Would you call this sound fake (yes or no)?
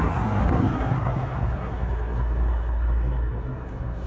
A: yes